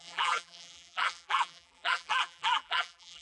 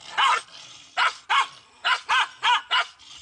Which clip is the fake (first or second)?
first